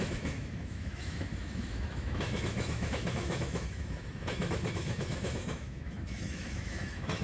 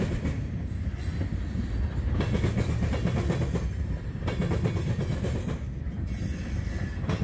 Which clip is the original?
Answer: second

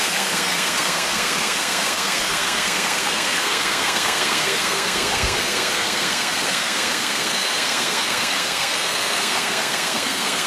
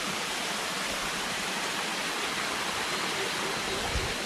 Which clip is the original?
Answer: second